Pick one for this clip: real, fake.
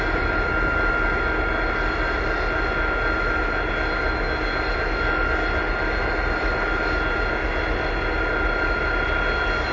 real